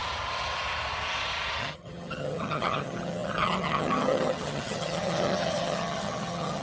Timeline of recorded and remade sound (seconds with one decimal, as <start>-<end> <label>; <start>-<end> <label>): 0.0-1.6 recorded; 1.6-6.6 remade